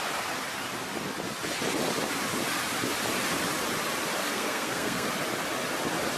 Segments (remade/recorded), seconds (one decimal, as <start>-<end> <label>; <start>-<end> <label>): 0.0-4.2 recorded; 4.2-5.1 remade; 5.1-6.2 recorded